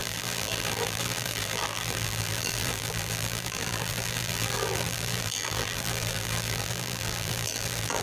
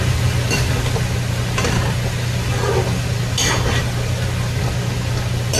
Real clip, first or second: second